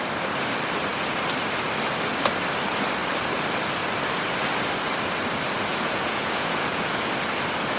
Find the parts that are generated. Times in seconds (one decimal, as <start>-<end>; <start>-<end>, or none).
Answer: 5.7-7.1